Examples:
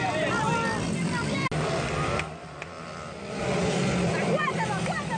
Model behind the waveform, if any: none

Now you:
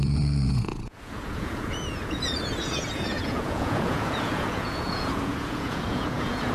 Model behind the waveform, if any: vocoder, Vocos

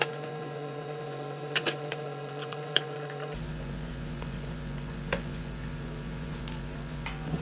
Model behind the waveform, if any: vocoder, Vocos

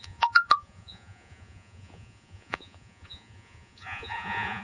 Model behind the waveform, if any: vocoder, Vocos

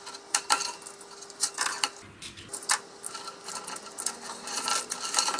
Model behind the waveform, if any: none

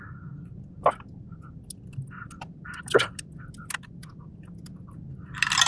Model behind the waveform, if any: none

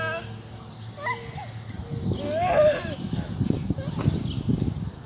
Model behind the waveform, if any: none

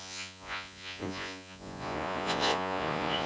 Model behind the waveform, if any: vocoder, Vocos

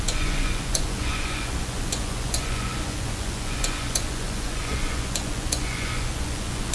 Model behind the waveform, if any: vocoder, Vocos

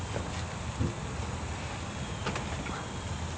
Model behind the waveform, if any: none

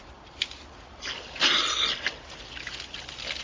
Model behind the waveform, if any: none